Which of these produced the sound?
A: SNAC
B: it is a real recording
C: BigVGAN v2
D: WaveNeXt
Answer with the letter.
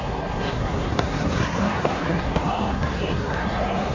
A